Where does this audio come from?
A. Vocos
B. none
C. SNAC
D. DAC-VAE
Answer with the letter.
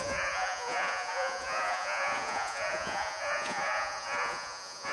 A